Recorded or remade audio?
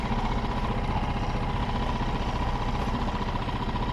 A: recorded